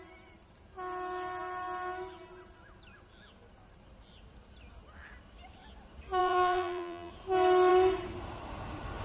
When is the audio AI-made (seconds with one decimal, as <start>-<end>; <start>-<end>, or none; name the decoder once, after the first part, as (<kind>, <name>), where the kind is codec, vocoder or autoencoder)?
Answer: 6.2-7.1 (vocoder, BigVGAN v2)